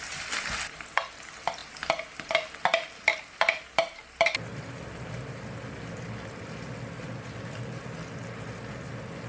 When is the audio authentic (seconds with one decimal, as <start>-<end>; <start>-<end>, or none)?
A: 0.0-9.3